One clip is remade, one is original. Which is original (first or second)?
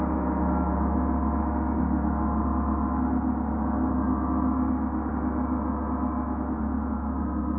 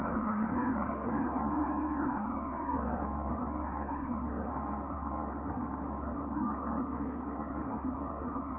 first